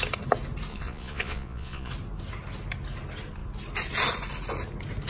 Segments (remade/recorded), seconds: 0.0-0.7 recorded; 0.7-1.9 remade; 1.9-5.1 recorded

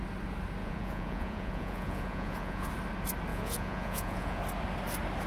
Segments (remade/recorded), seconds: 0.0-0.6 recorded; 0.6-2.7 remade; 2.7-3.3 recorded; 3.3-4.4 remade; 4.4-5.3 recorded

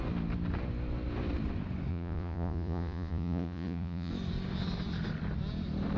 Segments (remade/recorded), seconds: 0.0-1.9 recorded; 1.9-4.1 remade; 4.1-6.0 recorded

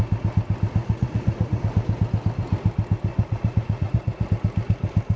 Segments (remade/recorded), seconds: 0.0-0.8 recorded; 0.8-1.6 remade; 1.6-3.1 recorded; 3.1-4.3 remade; 4.3-5.2 recorded